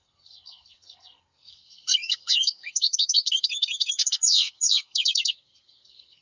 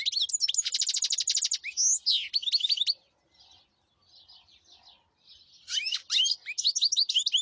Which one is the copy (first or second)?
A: first